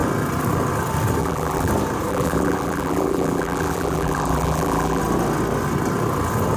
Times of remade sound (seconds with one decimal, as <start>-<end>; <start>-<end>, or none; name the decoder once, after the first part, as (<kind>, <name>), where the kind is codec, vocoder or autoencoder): 1.2-1.7 (vocoder, BigVGAN v2); 2.1-5.0